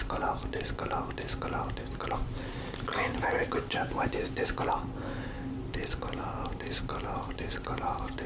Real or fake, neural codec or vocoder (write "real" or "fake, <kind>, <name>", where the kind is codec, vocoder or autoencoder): real